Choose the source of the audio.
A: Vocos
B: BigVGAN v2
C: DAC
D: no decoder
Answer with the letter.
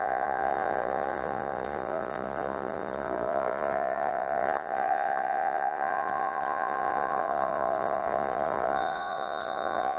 A